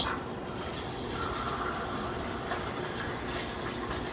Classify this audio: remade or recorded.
recorded